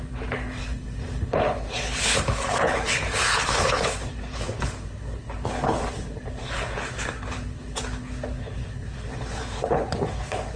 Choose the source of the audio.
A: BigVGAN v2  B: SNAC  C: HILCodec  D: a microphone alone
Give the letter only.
C